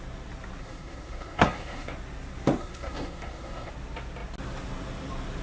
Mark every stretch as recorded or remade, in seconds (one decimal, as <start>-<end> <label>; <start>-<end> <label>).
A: 0.0-0.6 recorded; 0.6-1.9 remade; 1.9-2.6 recorded; 2.6-3.7 remade; 3.7-5.4 recorded